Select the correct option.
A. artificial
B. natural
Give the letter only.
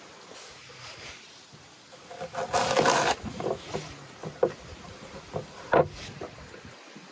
B